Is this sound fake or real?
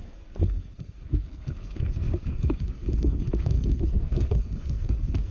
fake